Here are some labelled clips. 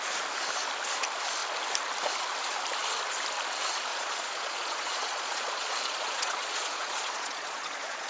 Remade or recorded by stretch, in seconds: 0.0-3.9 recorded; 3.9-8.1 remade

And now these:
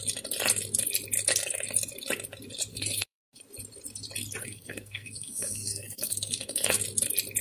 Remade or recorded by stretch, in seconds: 0.0-2.7 recorded; 2.7-3.4 remade; 3.4-4.4 recorded; 4.4-6.8 remade; 6.8-7.4 recorded

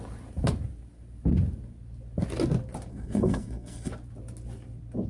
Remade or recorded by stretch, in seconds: 0.0-2.9 recorded; 2.9-3.9 remade; 3.9-5.1 recorded

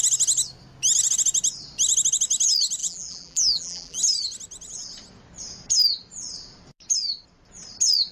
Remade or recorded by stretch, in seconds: 0.0-2.8 recorded; 2.8-4.0 remade; 4.0-8.1 recorded

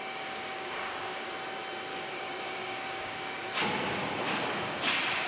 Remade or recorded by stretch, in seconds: 0.0-1.3 remade; 1.3-1.9 recorded; 1.9-3.6 remade; 3.6-5.3 recorded

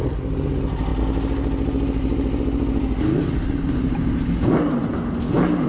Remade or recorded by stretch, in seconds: 0.0-5.7 recorded

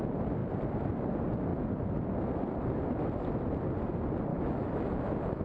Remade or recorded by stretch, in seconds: 0.0-4.3 recorded; 4.3-5.4 remade

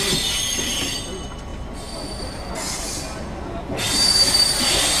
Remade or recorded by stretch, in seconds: 0.0-5.0 recorded